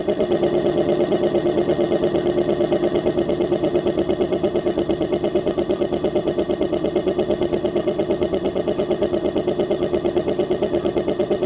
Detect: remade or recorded remade